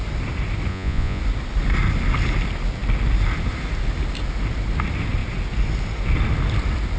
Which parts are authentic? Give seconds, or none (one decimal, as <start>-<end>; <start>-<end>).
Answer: 0.0-0.7; 1.2-7.0